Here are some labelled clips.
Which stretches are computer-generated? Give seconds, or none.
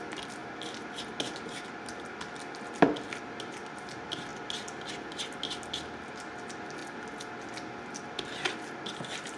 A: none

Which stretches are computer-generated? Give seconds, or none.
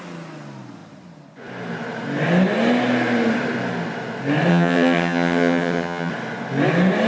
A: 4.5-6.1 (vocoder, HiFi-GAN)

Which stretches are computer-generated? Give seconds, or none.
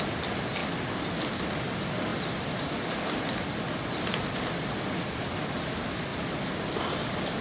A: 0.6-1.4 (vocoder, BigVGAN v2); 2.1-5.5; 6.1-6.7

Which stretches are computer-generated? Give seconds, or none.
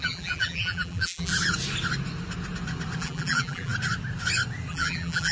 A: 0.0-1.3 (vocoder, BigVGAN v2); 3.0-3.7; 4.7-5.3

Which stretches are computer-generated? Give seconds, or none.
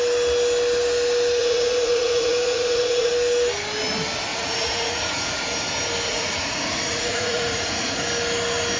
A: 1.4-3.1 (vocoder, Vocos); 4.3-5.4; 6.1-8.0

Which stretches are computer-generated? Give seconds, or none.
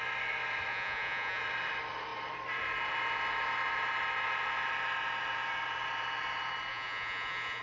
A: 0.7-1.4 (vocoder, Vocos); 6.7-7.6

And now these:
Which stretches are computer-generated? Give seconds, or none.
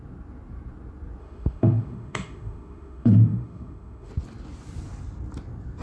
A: 1.2-4.1 (autoencoder, DAC-VAE)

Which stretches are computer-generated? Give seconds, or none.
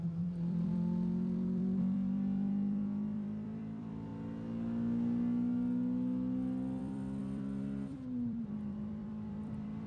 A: 0.0-4.1 (vocoder, BigVGAN v2); 6.8-9.9